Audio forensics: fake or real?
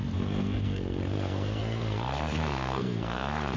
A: fake